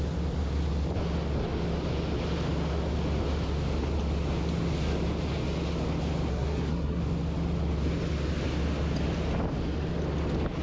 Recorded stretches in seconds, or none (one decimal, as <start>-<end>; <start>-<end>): 0.0-6.3; 7.0-10.6